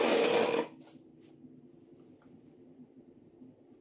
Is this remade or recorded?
recorded